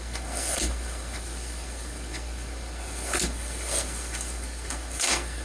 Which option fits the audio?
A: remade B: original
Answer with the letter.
A